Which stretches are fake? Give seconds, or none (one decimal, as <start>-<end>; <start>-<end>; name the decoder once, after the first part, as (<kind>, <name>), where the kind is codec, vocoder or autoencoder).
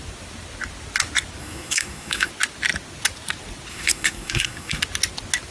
1.4-2.3 (codec, SNAC); 3.7-4.8